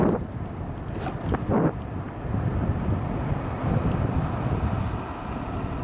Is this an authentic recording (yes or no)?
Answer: yes